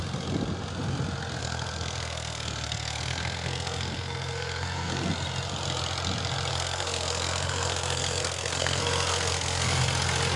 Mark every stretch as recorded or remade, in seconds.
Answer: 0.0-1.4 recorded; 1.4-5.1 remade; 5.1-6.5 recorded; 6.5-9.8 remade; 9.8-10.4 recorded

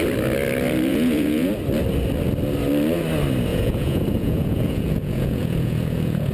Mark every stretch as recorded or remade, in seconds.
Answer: 0.0-0.9 recorded; 0.9-1.5 remade; 1.5-3.5 recorded; 3.5-6.3 remade

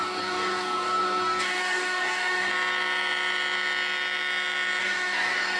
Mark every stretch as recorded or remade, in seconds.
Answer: 0.0-2.5 remade; 2.5-4.8 recorded; 4.8-5.6 remade

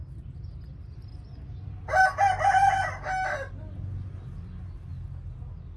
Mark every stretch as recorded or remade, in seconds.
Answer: 0.0-5.8 recorded

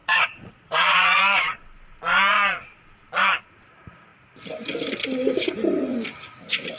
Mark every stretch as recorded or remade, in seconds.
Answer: 0.0-1.6 remade; 1.6-6.8 recorded